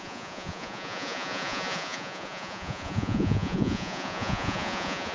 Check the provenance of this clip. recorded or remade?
remade